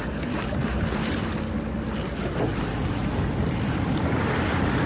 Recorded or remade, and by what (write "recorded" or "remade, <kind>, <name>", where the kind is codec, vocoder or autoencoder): remade, vocoder, BigVGAN v2